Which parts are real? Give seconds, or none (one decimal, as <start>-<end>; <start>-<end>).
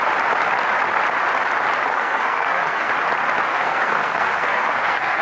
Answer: 0.0-1.9; 2.9-3.5